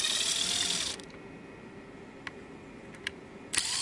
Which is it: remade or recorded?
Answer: recorded